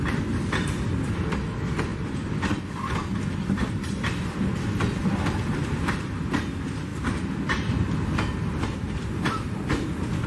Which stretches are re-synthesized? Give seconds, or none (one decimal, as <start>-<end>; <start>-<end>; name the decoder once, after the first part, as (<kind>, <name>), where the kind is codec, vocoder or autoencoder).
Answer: 0.0-10.3 (vocoder, BigVGAN v2)